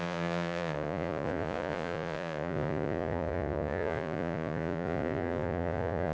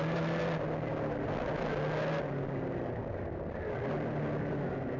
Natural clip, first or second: second